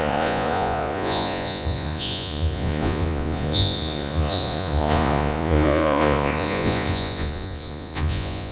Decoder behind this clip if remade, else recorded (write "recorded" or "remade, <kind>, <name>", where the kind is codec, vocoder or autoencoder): remade, vocoder, Vocos